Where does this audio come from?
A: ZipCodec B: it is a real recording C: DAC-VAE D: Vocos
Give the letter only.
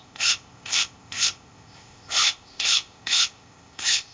A